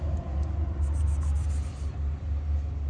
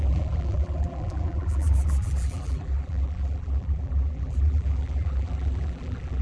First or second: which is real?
first